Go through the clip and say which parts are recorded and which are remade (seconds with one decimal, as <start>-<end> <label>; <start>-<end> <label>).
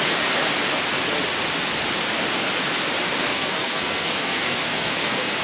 0.0-3.3 recorded; 3.3-5.4 remade